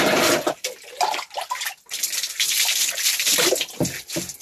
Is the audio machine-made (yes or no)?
no